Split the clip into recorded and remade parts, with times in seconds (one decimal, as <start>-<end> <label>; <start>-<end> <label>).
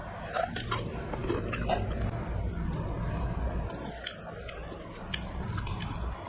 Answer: 0.0-1.2 remade; 1.2-3.1 recorded; 3.1-4.6 remade; 4.6-6.3 recorded